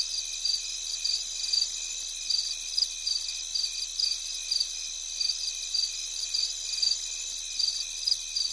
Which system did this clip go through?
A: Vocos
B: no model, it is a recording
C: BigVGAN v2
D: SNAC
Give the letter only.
B